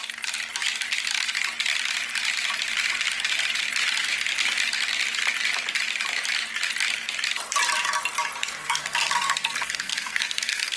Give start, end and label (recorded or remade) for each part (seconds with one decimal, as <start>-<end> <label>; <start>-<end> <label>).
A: 0.0-8.4 recorded; 8.4-10.8 remade